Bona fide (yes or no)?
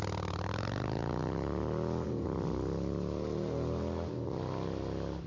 yes